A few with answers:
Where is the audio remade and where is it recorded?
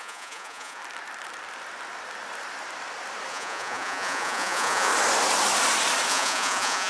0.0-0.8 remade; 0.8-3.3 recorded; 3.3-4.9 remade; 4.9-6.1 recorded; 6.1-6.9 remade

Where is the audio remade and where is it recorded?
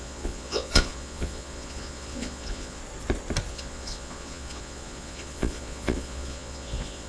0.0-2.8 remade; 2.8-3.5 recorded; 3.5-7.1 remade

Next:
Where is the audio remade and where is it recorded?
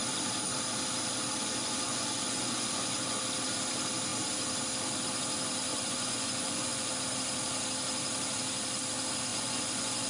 0.0-1.4 recorded; 1.4-3.2 remade; 3.2-5.7 recorded; 5.7-6.9 remade; 6.9-9.3 recorded; 9.3-10.1 remade